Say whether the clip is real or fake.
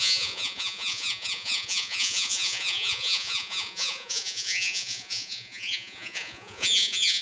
fake